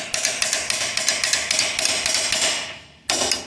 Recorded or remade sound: recorded